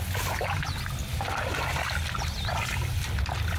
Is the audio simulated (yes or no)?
no